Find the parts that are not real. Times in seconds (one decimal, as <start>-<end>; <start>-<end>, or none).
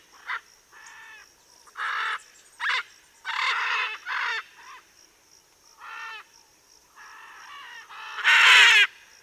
none